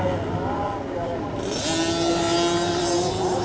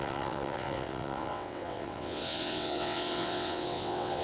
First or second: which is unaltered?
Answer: first